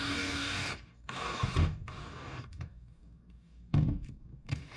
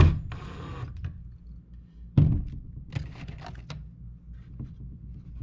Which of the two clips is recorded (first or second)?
second